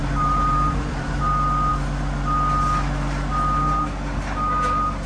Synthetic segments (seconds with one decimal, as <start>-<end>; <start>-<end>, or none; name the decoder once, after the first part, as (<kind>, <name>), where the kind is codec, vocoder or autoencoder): 0.0-1.2 (vocoder, BigVGAN v2)